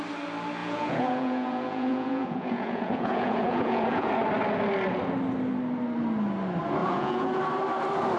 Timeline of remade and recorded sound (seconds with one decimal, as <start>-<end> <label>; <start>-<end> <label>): 0.0-0.6 recorded; 0.6-4.1 remade; 4.1-6.8 recorded; 6.8-7.4 remade; 7.4-8.2 recorded